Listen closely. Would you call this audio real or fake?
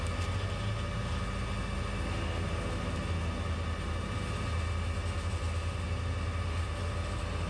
real